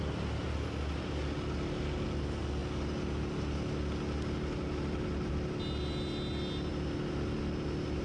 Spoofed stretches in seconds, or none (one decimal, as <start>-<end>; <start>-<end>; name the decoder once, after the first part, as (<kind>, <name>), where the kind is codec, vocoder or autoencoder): none